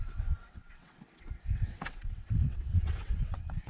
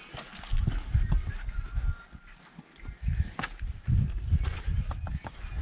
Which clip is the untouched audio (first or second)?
second